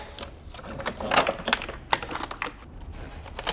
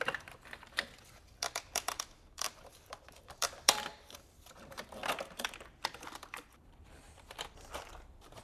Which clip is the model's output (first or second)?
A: second